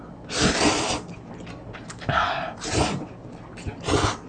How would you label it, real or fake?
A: real